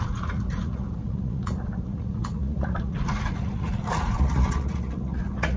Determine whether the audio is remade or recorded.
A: remade